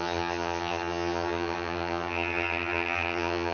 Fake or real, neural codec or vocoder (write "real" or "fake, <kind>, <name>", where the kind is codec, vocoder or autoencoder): fake, vocoder, HiFi-GAN